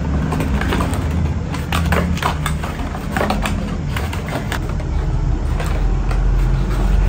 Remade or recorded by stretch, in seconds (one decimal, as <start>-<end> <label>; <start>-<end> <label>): 0.0-7.1 recorded